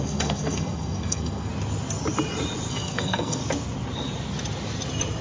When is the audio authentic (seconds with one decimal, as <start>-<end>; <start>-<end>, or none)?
1.5-2.7; 3.4-5.2